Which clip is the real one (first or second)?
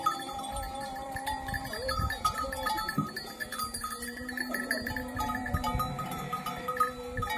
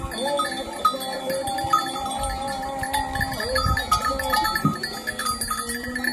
second